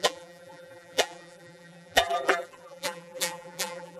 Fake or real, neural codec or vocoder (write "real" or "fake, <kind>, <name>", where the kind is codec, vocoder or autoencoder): fake, vocoder, BigVGAN v2